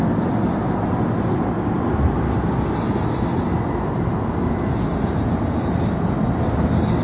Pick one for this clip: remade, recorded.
recorded